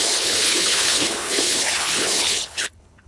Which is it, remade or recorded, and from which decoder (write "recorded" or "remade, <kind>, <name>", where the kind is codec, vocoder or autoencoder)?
remade, codec, HILCodec